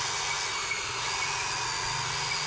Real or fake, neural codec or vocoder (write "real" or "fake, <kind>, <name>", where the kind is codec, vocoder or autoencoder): real